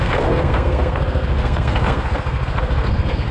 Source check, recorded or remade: remade